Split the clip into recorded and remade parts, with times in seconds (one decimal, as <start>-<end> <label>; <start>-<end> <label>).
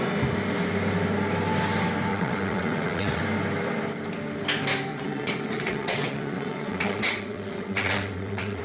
0.0-2.1 recorded; 2.1-3.2 remade; 3.2-4.9 recorded; 4.9-8.6 remade